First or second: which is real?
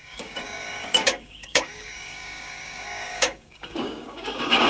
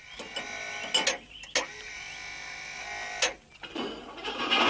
second